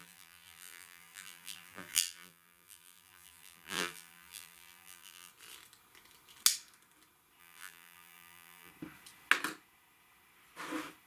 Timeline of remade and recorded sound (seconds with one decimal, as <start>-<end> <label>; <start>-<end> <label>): 0.0-5.3 remade; 5.3-7.4 recorded; 7.4-8.7 remade; 8.7-11.1 recorded